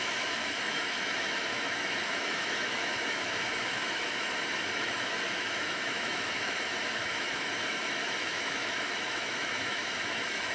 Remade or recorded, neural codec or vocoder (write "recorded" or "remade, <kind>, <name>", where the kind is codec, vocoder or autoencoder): remade, autoencoder, DAC-VAE